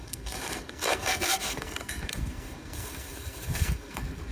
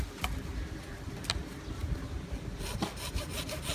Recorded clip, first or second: second